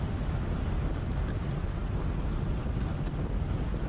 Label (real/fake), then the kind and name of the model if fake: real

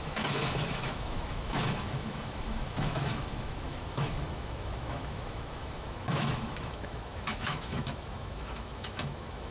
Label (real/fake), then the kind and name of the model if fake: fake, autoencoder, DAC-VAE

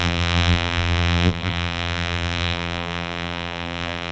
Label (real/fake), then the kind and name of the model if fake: fake, vocoder, BigVGAN v2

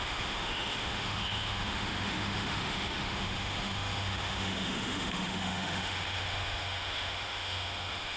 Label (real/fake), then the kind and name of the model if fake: fake, autoencoder, DAC-VAE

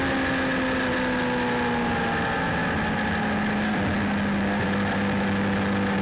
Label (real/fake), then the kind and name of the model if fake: real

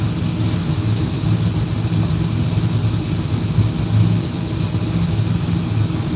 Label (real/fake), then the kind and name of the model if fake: real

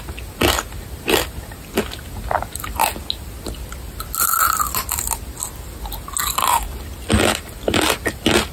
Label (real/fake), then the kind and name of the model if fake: real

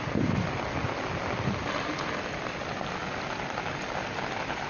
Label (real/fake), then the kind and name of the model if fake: real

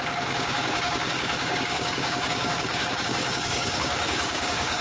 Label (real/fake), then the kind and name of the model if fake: fake, codec, DAC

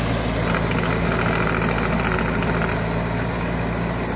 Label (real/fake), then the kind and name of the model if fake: real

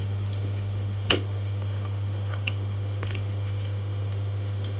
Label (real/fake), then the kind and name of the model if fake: fake, autoencoder, DAC-VAE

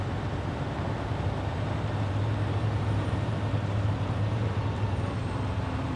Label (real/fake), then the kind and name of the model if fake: fake, vocoder, BigVGAN v2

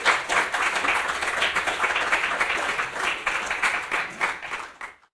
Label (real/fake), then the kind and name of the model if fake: real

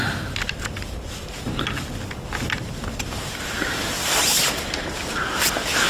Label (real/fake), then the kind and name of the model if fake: real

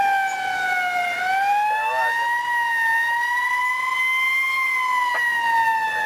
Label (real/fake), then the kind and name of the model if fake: real